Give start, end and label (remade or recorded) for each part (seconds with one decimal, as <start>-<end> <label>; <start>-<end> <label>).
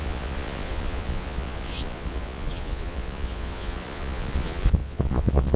0.0-5.6 remade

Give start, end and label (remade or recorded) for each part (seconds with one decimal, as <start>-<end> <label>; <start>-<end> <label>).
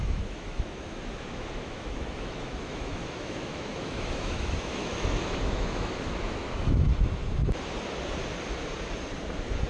0.0-6.9 remade; 6.9-9.7 recorded